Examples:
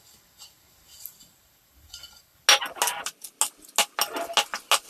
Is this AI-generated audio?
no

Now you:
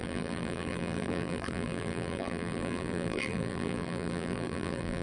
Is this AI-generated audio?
yes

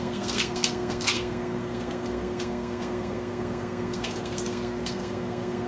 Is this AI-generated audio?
yes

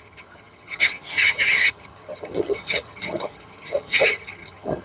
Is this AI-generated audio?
yes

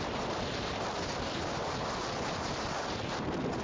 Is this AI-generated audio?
no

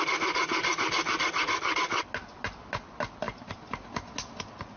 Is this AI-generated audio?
no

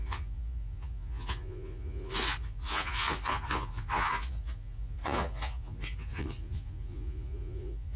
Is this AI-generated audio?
yes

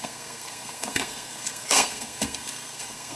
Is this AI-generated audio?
yes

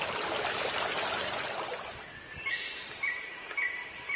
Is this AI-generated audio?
yes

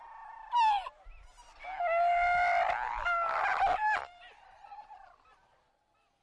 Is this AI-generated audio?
no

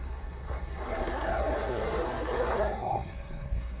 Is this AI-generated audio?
yes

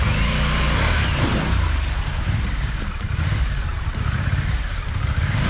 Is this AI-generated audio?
yes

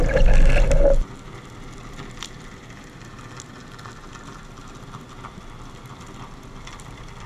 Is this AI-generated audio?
no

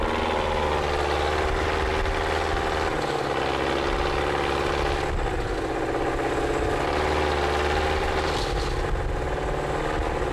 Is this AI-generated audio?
no